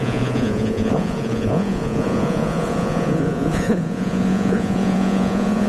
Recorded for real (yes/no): no